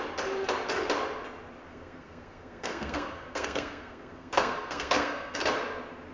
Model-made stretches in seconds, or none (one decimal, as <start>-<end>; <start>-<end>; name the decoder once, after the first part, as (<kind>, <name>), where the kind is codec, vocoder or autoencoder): 1.7-5.4 (codec, SNAC)